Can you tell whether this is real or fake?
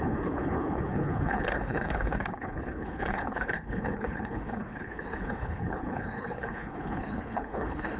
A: fake